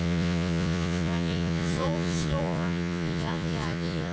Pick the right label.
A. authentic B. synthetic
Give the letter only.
B